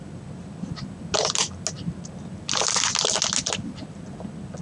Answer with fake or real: real